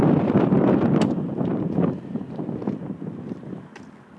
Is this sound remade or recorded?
recorded